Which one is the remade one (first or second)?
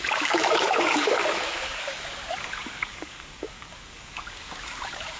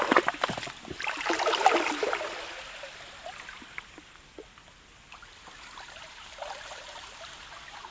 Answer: first